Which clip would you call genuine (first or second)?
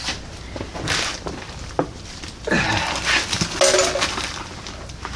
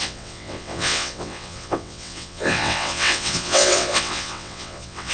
first